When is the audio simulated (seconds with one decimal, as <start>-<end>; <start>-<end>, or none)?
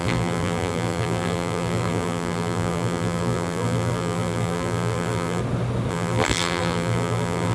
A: 0.0-5.4; 5.9-7.5